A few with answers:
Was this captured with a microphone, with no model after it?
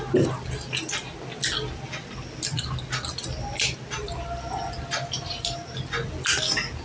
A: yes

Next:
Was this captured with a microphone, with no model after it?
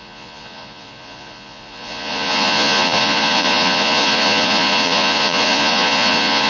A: no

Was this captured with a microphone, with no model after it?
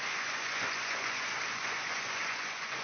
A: no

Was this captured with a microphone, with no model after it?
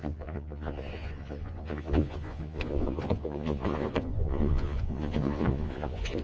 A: no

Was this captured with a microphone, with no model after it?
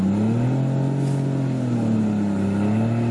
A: yes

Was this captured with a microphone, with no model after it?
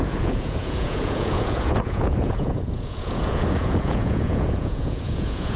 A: no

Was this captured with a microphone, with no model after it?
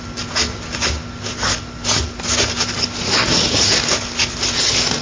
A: yes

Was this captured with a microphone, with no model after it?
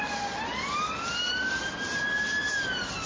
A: yes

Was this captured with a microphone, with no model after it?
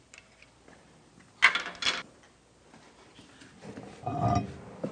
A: yes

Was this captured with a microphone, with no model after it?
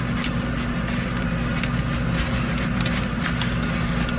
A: yes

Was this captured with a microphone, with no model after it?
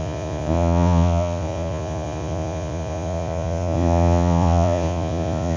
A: no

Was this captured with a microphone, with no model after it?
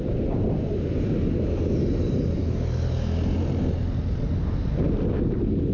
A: yes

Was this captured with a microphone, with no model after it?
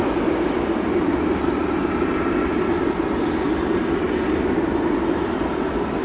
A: yes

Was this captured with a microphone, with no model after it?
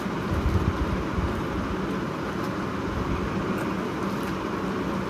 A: yes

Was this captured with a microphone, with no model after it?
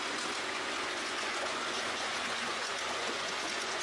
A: no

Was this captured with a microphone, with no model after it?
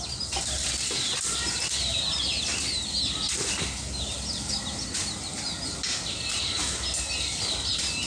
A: yes